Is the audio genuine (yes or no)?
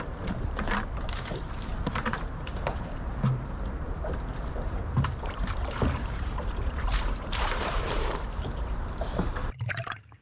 no